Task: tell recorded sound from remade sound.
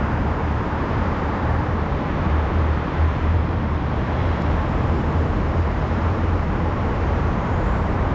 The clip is remade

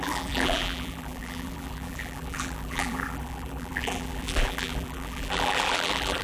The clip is remade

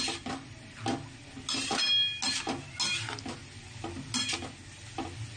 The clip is recorded